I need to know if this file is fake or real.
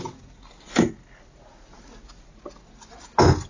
real